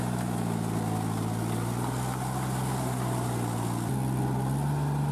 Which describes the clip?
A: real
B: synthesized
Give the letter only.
A